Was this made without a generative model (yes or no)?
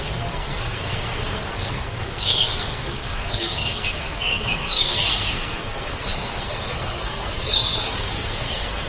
no